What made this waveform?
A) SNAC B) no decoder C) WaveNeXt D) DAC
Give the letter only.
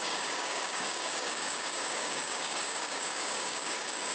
D